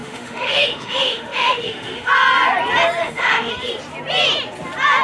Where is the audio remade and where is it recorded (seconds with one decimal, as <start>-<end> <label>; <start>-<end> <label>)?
0.0-2.1 remade; 2.1-3.0 recorded; 3.0-3.5 remade; 3.5-5.0 recorded